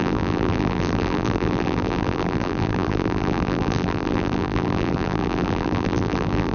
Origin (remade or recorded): remade